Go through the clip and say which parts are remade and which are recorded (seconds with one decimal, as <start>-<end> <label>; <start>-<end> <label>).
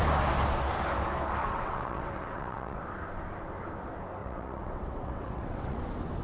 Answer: 0.0-1.4 recorded; 1.4-2.8 remade; 2.8-4.2 recorded; 4.2-5.8 remade; 5.8-6.2 recorded